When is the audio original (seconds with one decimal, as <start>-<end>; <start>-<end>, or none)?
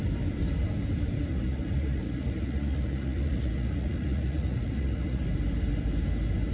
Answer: 0.0-1.3; 5.2-6.5